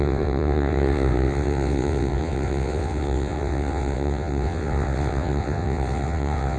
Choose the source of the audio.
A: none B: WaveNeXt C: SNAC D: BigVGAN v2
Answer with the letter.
B